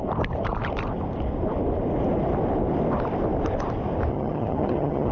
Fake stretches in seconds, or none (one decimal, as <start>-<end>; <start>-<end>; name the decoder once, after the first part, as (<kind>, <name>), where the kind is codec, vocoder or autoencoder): 4.1-5.1 (vocoder, HiFi-GAN)